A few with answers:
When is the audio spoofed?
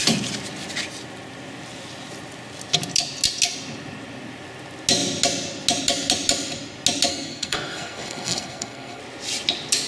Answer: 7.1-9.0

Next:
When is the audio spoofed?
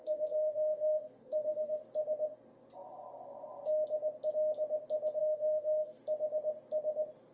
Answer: 0.0-1.8; 5.2-6.0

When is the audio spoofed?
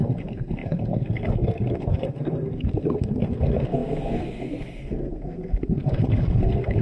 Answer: 0.0-6.8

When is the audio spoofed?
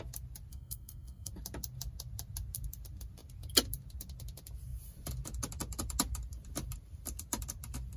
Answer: 0.5-1.3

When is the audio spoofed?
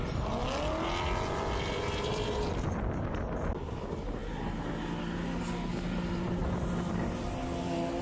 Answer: none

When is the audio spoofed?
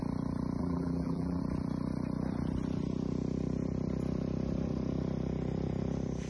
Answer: 0.6-1.4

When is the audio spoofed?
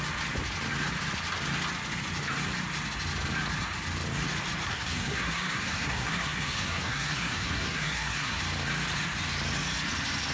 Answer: 4.7-8.4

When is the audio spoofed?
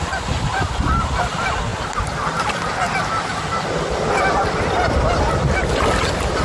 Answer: none